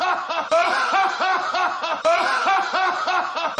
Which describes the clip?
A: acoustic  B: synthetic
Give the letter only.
B